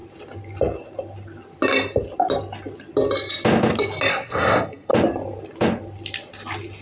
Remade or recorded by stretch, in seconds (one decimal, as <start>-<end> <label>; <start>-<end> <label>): 0.0-4.1 recorded; 4.1-4.9 remade; 4.9-6.8 recorded